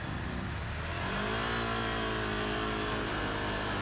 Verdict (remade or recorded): recorded